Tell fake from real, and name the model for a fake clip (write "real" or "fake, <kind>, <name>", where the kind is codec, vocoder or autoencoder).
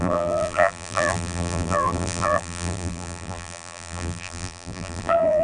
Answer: fake, vocoder, BigVGAN v2